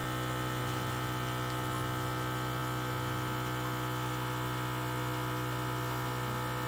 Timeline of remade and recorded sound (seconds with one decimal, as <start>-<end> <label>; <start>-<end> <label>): 0.0-6.7 recorded